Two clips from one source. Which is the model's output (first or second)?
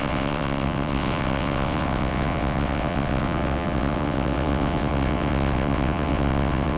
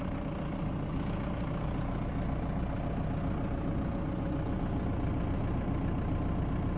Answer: first